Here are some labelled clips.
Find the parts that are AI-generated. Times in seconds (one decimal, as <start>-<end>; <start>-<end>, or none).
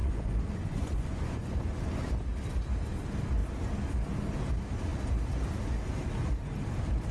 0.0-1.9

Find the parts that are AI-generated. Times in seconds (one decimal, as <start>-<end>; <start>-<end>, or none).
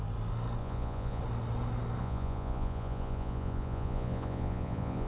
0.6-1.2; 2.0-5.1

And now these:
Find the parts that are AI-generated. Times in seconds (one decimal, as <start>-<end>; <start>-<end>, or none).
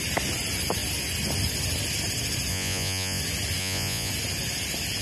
2.5-3.2; 3.6-4.1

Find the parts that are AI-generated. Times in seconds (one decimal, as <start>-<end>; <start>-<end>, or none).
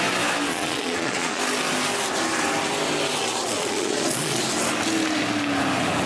0.5-1.4; 3.2-4.4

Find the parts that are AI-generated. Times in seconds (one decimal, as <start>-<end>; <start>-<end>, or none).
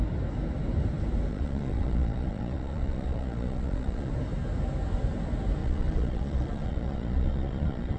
1.3-4.1; 5.6-8.0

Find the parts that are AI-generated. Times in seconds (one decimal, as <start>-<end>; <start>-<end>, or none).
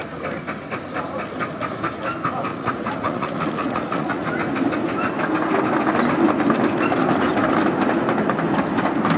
2.5-4.3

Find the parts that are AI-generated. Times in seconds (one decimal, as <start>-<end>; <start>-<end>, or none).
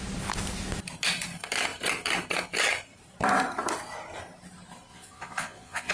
4.9-5.9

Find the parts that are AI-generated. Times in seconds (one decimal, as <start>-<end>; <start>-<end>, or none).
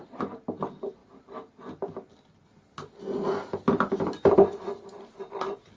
none